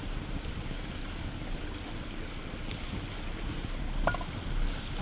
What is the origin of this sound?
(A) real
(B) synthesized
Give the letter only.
A